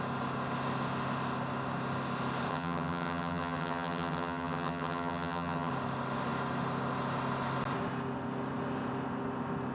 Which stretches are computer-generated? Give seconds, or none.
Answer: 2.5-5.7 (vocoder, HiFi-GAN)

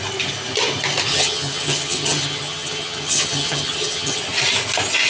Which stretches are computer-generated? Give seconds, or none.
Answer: 1.1-4.2 (vocoder, HiFi-GAN)

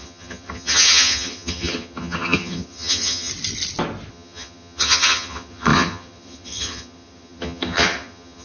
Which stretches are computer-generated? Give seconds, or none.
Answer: 0.0-3.3 (vocoder, HiFi-GAN); 4.1-8.4

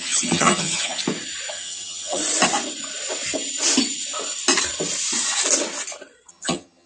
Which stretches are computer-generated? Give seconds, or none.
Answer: 0.0-1.0 (vocoder, HiFi-GAN); 1.5-2.2; 6.3-6.9